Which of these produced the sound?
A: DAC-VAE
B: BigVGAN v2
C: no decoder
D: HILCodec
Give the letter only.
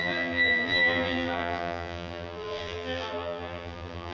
B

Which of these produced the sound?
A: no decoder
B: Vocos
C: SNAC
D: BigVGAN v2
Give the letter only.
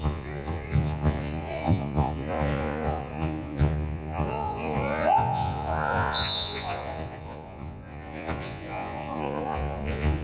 B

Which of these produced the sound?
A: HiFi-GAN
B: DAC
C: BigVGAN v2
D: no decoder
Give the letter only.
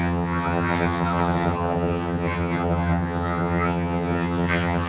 A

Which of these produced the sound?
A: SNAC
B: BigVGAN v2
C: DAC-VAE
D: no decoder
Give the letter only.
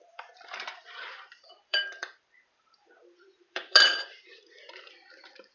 B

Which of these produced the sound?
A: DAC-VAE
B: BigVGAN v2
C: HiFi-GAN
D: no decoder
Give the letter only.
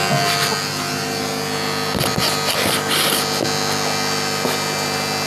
D